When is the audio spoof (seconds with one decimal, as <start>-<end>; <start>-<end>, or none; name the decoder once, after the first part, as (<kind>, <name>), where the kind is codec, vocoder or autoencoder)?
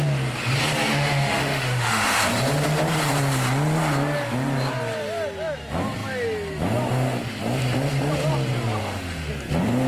0.9-2.2 (autoencoder, DAC-VAE); 8.8-9.3